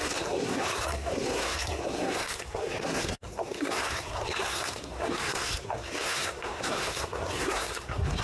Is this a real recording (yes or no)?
no